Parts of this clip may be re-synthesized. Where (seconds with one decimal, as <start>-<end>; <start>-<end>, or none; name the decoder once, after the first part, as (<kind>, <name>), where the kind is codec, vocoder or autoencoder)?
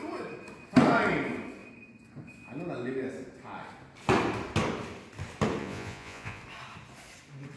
5.6-6.4 (vocoder, Vocos)